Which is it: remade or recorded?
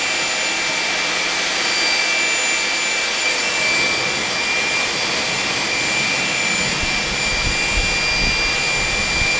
recorded